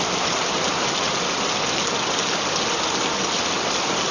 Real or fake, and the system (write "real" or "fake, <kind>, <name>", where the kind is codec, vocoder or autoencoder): fake, vocoder, BigVGAN v2